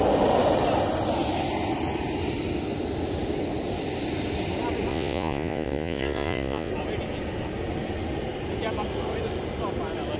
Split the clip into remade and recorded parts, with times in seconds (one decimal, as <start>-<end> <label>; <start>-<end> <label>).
0.0-4.9 recorded; 4.9-6.7 remade; 6.7-10.2 recorded